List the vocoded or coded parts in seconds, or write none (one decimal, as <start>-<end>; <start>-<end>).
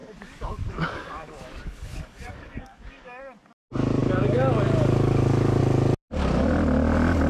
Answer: 0.0-3.2; 4.0-5.6